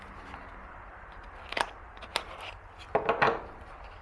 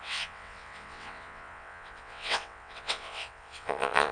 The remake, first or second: second